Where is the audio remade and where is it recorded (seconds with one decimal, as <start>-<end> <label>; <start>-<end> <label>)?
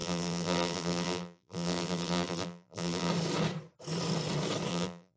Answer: 0.0-3.1 remade; 3.1-4.7 recorded; 4.7-5.2 remade